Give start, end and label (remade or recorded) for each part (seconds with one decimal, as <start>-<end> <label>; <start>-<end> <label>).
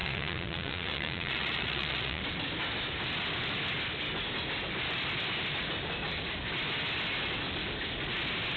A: 0.0-2.2 remade; 2.2-8.6 recorded